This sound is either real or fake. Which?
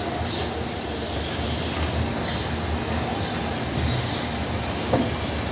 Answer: real